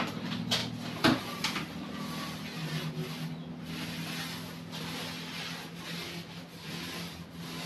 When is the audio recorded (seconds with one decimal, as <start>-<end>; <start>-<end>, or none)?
0.0-7.7